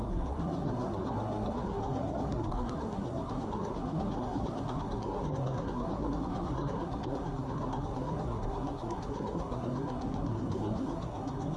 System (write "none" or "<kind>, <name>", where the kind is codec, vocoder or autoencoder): codec, SNAC